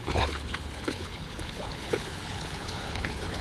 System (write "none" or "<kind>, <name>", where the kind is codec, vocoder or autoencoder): codec, HILCodec